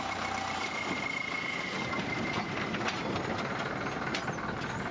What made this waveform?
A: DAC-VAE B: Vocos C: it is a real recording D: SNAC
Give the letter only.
C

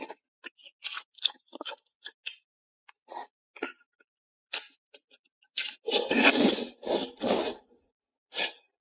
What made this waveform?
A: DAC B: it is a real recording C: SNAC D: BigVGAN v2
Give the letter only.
B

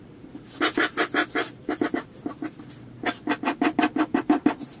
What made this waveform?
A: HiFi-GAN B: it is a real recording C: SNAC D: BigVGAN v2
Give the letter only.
B